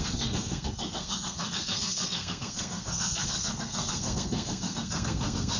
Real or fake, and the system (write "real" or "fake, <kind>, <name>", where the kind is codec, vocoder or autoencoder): fake, codec, SNAC